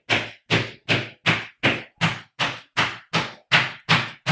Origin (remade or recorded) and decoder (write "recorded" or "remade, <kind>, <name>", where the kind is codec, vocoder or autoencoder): recorded